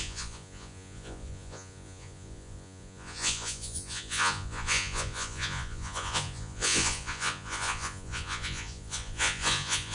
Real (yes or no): no